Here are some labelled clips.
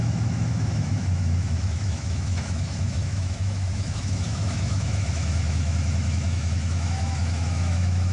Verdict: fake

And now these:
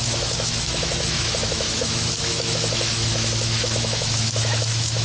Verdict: fake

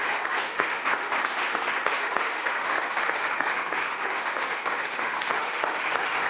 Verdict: fake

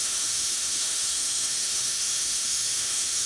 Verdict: fake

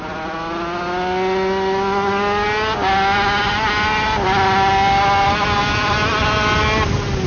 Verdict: real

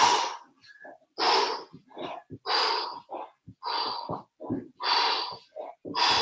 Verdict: real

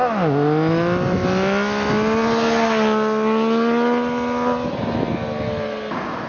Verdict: real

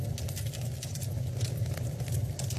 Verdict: real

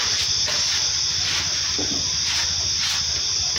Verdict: real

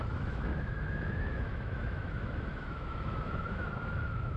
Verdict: fake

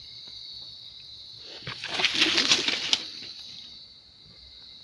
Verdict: real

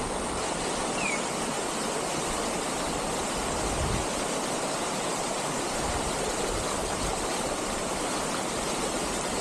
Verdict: real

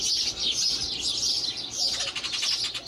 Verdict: real